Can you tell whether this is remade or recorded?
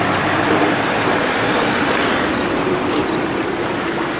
recorded